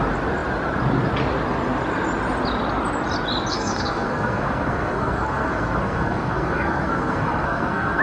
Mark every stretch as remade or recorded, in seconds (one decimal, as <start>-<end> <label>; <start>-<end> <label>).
0.0-3.5 recorded; 3.5-8.0 remade